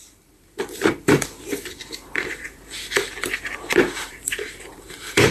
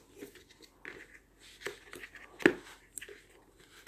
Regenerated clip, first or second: first